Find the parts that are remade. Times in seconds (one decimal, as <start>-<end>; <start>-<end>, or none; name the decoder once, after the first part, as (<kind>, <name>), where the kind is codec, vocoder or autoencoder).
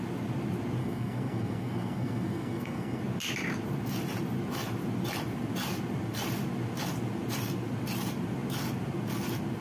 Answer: 0.8-3.0 (codec, SNAC)